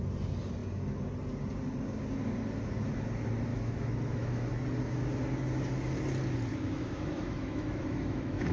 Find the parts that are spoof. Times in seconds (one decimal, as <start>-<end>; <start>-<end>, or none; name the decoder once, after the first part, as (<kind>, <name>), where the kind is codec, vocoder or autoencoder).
3.5-4.5 (autoencoder, DAC-VAE); 6.5-8.5